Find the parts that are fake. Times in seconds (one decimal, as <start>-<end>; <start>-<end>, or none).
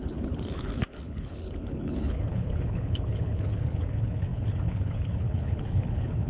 0.0-6.3